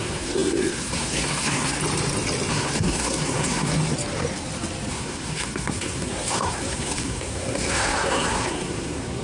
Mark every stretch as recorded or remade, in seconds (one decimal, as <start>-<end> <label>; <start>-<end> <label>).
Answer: 0.0-1.8 remade; 1.8-2.5 recorded; 2.5-3.8 remade; 3.8-4.9 recorded; 4.9-9.2 remade